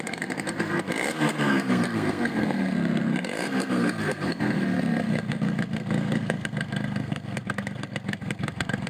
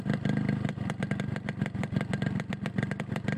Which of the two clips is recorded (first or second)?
second